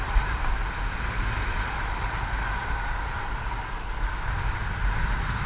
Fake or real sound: fake